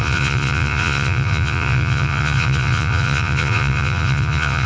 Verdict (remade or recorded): remade